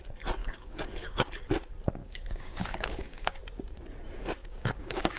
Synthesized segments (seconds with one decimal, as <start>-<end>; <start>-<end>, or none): 0.4-1.3; 2.0-3.4; 4.4-5.2